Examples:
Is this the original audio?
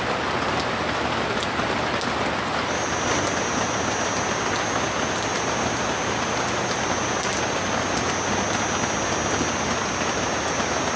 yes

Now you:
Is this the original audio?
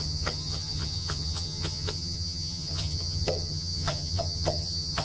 no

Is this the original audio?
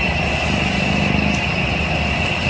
yes